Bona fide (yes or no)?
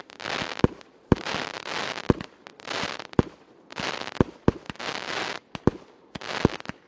yes